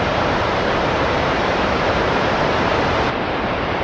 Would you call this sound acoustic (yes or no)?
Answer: no